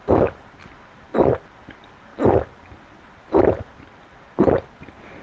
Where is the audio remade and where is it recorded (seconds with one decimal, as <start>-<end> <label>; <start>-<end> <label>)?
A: 0.0-5.2 recorded